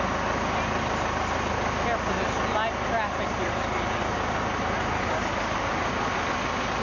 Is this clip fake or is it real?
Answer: real